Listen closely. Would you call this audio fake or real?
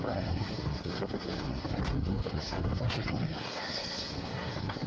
fake